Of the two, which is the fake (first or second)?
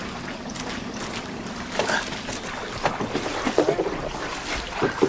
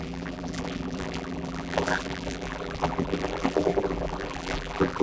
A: second